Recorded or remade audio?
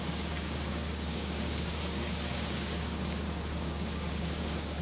remade